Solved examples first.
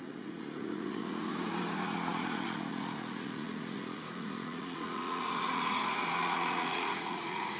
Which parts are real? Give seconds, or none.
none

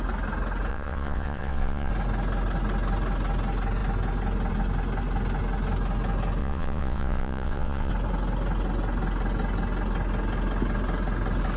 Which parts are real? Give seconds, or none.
0.0-0.7; 1.9-6.4; 7.9-11.6

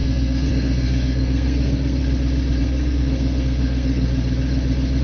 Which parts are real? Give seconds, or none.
2.0-2.6; 4.1-5.0

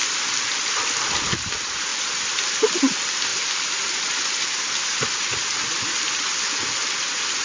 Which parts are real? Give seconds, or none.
none

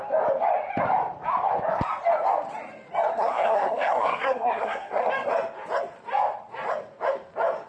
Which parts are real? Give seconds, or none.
0.0-3.1; 5.1-7.7